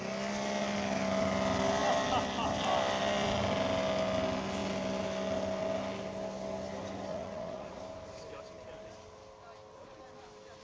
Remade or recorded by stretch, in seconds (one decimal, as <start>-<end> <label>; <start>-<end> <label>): 0.0-7.1 recorded; 7.1-7.8 remade; 7.8-10.6 recorded